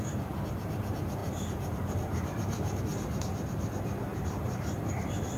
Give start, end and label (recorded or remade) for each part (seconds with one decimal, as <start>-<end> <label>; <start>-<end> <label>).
0.0-1.2 recorded; 1.2-2.8 remade; 2.8-4.1 recorded; 4.1-5.4 remade